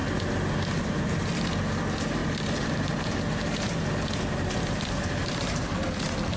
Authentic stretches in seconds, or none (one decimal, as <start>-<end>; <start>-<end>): 0.0-2.2; 3.3-5.2; 5.9-6.4